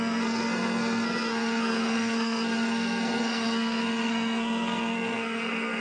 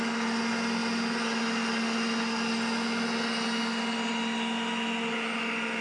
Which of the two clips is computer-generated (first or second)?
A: first